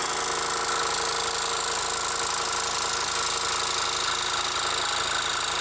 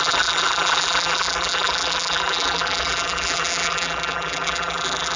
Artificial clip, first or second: second